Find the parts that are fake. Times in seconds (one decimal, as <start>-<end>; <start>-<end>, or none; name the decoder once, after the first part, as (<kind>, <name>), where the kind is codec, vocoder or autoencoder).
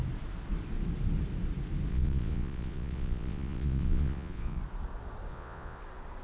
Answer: 1.9-4.6 (vocoder, Vocos); 5.3-5.8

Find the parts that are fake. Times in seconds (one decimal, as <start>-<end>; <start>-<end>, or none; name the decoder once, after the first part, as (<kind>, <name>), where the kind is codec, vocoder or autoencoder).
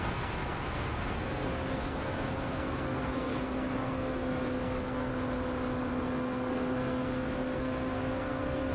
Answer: 0.0-5.1 (codec, SNAC); 5.9-8.7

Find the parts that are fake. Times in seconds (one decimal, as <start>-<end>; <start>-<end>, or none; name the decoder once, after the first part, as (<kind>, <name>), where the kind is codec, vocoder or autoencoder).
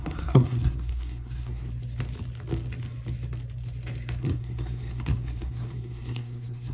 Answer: 0.0-1.7 (codec, SNAC); 4.2-6.7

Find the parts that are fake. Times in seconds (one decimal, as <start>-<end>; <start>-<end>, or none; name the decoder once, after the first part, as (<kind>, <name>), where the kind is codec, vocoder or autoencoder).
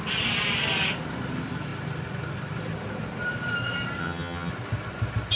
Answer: 4.0-4.5 (vocoder, HiFi-GAN)